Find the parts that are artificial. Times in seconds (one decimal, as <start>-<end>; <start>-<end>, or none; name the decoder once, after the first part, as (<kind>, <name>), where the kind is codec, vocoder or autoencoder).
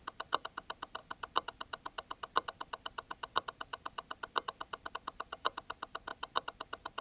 1.0-4.9 (vocoder, BigVGAN v2); 6.1-7.0